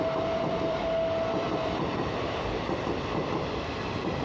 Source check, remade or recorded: remade